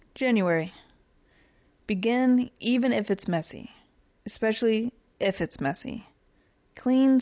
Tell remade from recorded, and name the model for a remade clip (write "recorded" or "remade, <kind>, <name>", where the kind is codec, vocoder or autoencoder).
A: recorded